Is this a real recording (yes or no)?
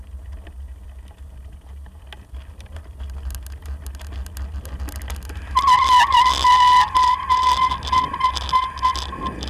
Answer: yes